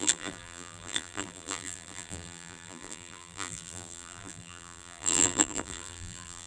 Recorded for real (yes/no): no